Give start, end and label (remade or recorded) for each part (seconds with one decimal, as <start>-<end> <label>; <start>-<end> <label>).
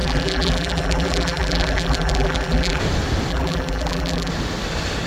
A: 0.0-2.8 remade; 2.8-3.3 recorded; 3.3-4.3 remade; 4.3-5.1 recorded